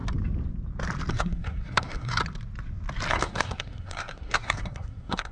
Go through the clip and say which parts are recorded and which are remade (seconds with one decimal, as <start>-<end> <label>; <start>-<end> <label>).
0.0-1.1 recorded; 1.1-2.2 remade; 2.2-3.1 recorded; 3.1-5.3 remade